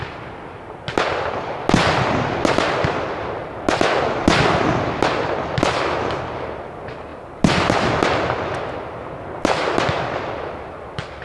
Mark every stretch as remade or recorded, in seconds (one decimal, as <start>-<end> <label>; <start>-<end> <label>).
0.0-11.2 recorded